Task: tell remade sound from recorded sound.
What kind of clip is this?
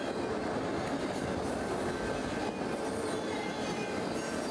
recorded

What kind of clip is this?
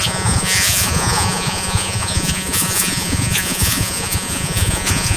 remade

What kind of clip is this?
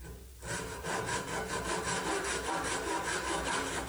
recorded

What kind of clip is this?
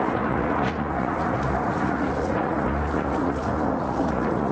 remade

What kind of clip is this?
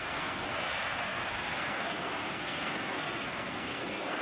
remade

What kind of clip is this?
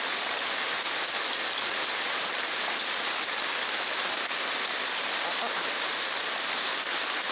recorded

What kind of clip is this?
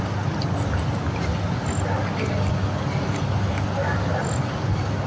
recorded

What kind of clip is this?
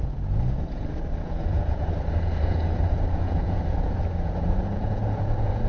remade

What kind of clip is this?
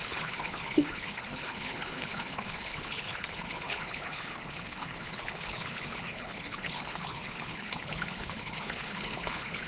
remade